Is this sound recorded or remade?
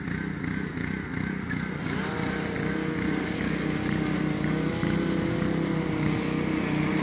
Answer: recorded